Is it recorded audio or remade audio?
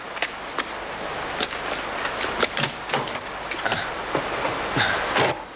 recorded